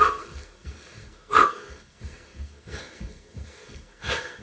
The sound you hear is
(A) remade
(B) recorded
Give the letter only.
A